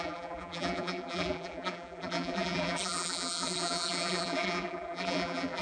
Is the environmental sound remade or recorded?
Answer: remade